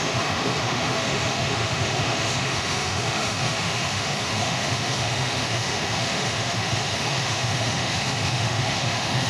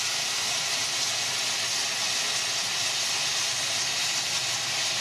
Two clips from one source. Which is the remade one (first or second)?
first